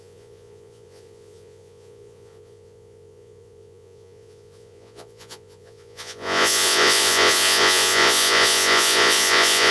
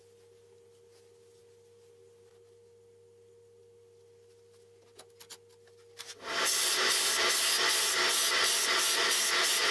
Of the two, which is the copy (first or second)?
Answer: first